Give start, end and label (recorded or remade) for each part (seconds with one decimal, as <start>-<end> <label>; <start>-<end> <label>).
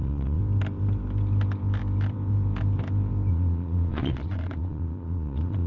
0.0-0.4 remade; 0.4-3.3 recorded; 3.3-5.7 remade